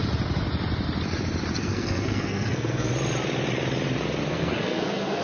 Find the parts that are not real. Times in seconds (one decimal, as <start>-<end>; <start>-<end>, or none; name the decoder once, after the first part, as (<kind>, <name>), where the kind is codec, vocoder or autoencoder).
1.6-2.9 (codec, SNAC); 4.3-5.2